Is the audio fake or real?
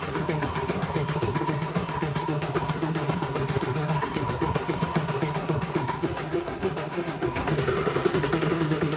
fake